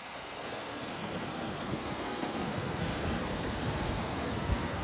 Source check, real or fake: fake